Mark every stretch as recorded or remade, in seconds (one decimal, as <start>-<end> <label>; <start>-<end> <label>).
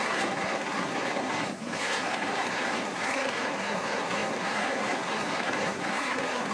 0.0-6.5 remade